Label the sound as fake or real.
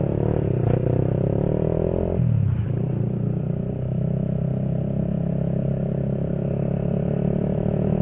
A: real